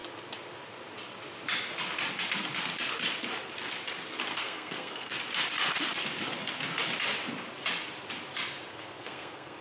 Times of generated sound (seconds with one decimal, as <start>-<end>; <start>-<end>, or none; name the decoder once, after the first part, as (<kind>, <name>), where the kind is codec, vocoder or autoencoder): 4.3-5.1 (codec, SNAC); 8.7-9.6